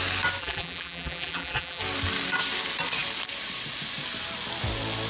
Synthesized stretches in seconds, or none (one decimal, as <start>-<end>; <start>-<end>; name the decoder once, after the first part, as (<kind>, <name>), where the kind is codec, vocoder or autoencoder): 0.4-1.8 (vocoder, BigVGAN v2)